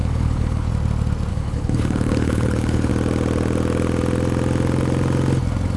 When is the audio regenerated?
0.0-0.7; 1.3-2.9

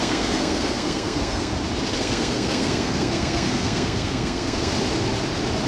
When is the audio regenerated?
0.0-1.5; 2.0-4.7

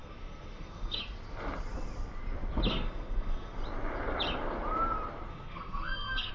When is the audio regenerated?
0.0-1.0; 2.7-3.6; 5.3-6.3